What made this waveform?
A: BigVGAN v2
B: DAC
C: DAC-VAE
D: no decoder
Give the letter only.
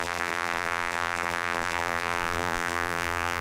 A